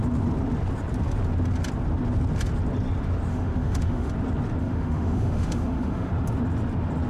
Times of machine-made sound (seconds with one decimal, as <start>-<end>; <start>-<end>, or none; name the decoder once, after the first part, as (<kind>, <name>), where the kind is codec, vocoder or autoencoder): 3.3-4.1 (autoencoder, DAC-VAE); 4.6-6.1